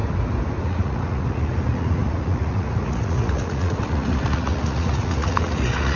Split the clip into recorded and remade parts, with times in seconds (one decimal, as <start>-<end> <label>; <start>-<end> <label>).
0.0-0.6 recorded; 0.6-6.0 remade